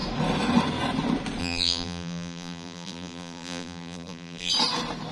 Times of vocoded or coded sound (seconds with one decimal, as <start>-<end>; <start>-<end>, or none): 1.4-4.5